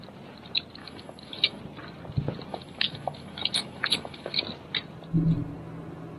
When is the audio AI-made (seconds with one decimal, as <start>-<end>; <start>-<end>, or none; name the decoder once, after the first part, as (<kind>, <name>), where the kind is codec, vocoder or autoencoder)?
0.8-1.6 (autoencoder, DAC-VAE); 2.5-4.4